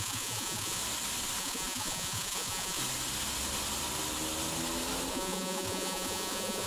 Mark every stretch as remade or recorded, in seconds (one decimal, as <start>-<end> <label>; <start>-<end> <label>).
0.0-0.8 remade; 0.8-1.4 recorded; 1.4-2.8 remade; 2.8-5.1 recorded; 5.1-6.7 remade